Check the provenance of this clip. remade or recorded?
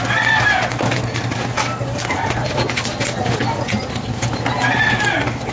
recorded